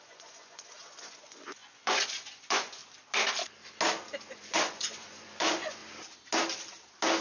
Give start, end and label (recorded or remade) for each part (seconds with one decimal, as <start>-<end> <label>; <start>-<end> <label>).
0.0-2.8 remade; 2.8-4.2 recorded; 4.2-5.8 remade; 5.8-7.2 recorded